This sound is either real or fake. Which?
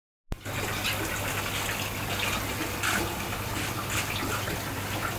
real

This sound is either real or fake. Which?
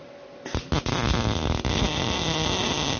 real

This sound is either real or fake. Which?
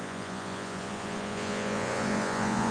fake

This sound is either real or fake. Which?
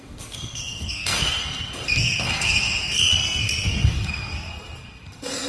fake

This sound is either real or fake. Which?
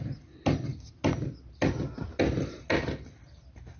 real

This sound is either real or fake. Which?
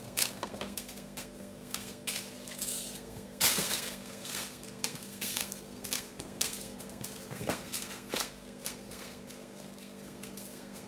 fake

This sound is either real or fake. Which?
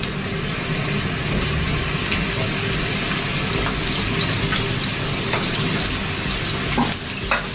real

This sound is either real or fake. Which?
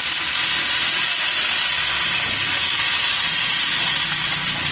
real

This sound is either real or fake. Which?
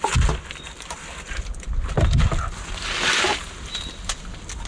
real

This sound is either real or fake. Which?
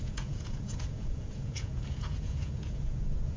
fake